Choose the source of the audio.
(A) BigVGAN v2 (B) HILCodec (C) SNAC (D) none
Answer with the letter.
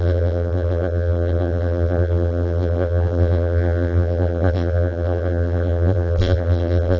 A